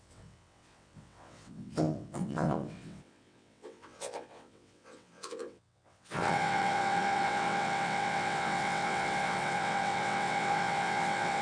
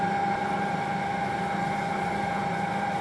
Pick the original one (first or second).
second